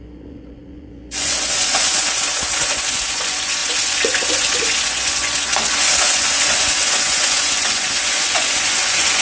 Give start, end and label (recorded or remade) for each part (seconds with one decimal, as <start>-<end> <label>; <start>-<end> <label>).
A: 0.0-9.2 remade